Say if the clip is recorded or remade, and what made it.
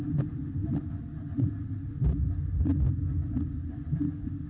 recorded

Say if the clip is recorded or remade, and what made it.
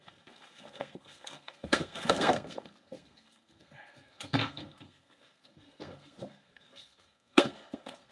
remade, codec, SNAC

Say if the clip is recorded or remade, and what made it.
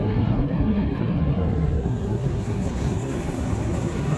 remade, codec, SNAC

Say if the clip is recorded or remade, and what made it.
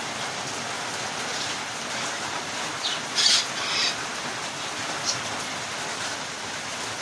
recorded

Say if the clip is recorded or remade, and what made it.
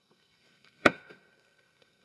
remade, codec, SNAC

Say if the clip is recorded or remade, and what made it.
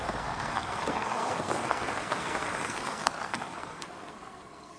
remade, codec, SNAC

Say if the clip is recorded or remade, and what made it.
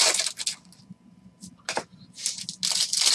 recorded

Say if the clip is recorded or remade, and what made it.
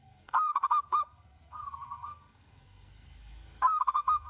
remade, codec, SNAC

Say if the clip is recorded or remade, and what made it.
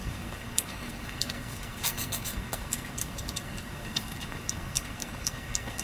remade, codec, SNAC